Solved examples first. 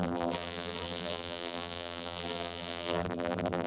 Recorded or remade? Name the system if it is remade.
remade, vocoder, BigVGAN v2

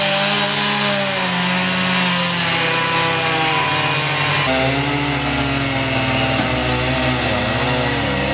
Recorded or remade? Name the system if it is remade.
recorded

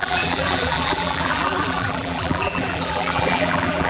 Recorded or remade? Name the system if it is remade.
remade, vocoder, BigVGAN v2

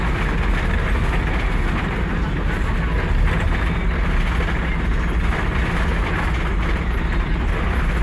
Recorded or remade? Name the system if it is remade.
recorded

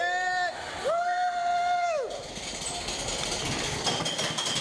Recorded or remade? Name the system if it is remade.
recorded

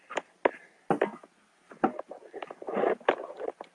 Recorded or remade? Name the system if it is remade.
recorded